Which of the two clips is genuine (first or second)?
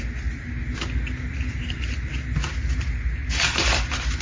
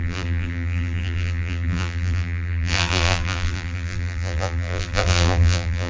first